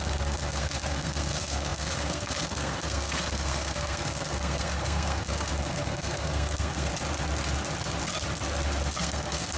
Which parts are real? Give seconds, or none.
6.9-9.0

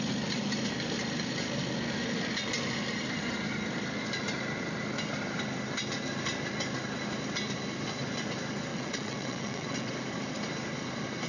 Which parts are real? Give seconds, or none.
0.0-8.7; 9.9-11.3

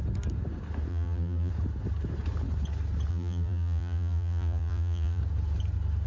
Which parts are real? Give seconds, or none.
0.0-0.9; 1.5-3.1; 5.2-6.1

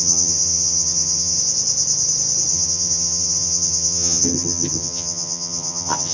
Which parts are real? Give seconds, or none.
1.4-2.5

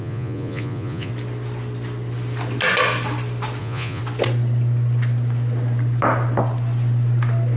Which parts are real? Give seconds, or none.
1.1-3.6; 4.0-7.6